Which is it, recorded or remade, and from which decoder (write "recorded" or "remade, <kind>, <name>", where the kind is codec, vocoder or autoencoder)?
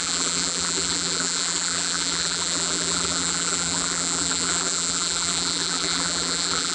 remade, vocoder, BigVGAN v2